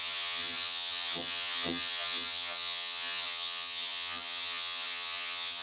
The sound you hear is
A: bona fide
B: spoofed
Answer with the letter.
B